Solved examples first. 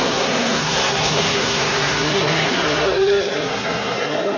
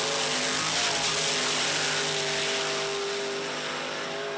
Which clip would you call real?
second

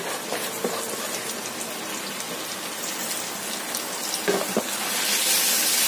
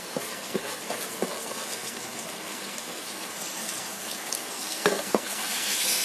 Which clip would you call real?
first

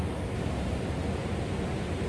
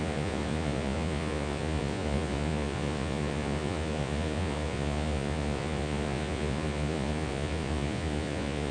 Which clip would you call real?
first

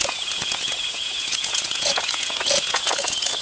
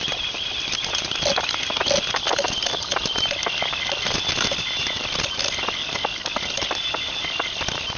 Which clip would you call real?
second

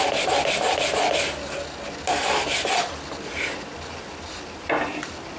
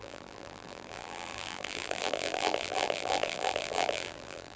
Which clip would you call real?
first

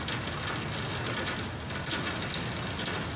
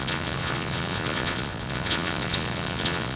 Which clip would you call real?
first